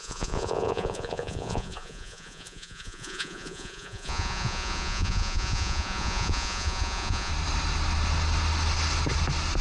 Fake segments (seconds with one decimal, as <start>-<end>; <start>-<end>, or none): 0.0-7.3